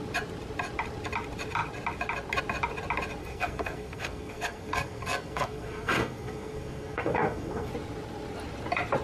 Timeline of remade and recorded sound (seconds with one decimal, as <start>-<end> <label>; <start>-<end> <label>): 0.0-3.2 recorded; 3.2-7.7 remade; 7.7-9.0 recorded